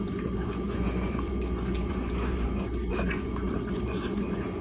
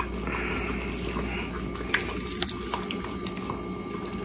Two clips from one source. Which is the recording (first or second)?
second